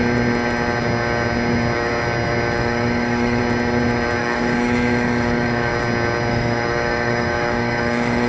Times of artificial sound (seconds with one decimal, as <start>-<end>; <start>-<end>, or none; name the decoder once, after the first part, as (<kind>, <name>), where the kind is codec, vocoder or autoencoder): 2.6-3.4 (codec, DAC); 4.2-5.7; 6.3-8.3